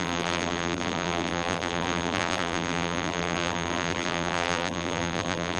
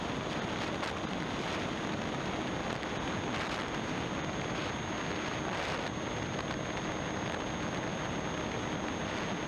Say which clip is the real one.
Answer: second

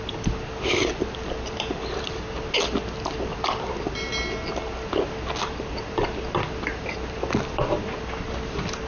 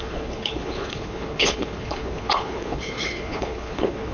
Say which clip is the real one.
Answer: first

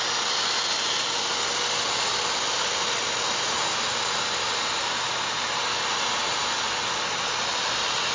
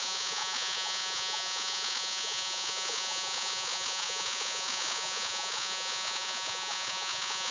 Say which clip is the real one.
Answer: first